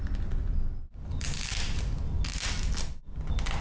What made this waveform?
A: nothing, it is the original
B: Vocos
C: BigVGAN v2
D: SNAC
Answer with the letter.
A